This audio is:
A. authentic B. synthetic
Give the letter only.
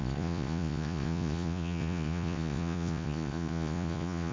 B